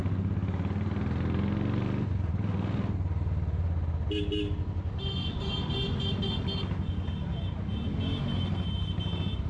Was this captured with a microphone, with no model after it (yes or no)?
yes